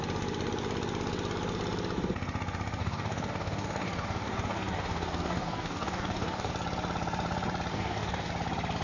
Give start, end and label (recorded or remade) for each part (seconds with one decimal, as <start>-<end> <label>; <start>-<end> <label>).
0.0-2.8 recorded; 2.8-6.5 remade; 6.5-7.7 recorded; 7.7-8.3 remade; 8.3-8.8 recorded